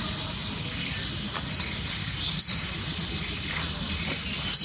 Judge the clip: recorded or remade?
recorded